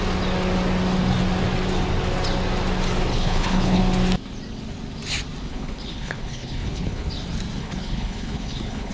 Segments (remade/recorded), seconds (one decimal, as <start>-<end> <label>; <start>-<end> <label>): 0.0-3.1 recorded; 3.1-3.8 remade; 3.8-5.5 recorded; 5.5-7.1 remade; 7.1-7.6 recorded; 7.6-8.9 remade